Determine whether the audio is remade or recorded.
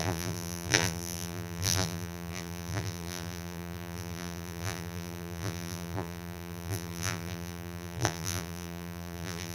remade